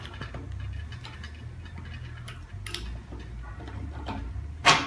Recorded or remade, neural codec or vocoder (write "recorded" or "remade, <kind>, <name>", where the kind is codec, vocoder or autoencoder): recorded